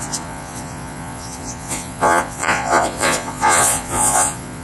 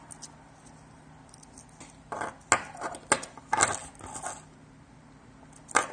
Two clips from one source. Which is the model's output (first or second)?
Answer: first